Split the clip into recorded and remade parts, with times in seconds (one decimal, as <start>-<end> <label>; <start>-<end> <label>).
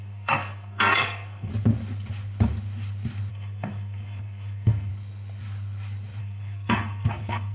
0.0-1.5 remade; 1.5-3.3 recorded; 3.3-4.9 remade; 4.9-6.2 recorded; 6.2-7.5 remade